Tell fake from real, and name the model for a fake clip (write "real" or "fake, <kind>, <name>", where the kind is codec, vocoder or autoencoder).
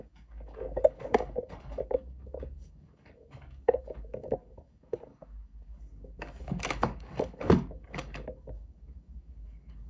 fake, codec, DAC